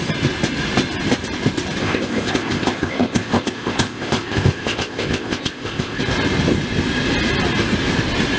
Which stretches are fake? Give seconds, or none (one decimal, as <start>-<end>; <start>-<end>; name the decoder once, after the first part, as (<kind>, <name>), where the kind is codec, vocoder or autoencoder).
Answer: 1.8-6.0 (codec, ZipCodec)